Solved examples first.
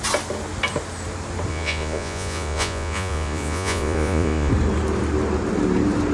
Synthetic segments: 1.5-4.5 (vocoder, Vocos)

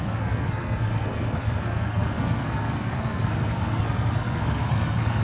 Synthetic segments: 0.0-5.2 (codec, SNAC)

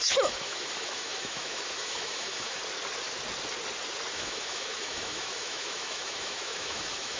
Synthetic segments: 0.0-2.6 (autoencoder, DAC-VAE); 4.1-7.2

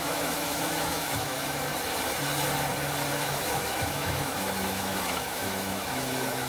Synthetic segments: 0.0-1.7 (autoencoder, DAC-VAE); 3.1-6.5

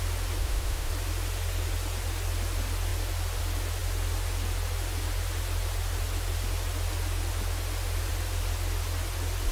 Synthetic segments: 0.4-0.9 (autoencoder, DAC-VAE)

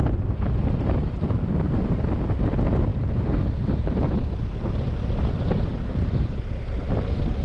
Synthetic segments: none

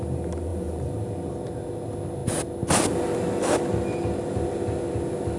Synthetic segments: 0.5-1.1 (vocoder, BigVGAN v2)

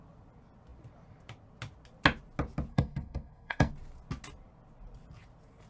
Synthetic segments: 2.7-3.7 (codec, SNAC)